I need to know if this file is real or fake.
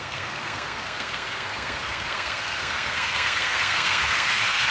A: fake